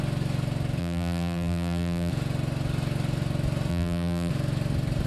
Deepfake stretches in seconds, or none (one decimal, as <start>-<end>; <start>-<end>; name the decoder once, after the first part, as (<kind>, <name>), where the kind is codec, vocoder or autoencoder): 0.8-2.1 (vocoder, BigVGAN v2); 3.7-4.3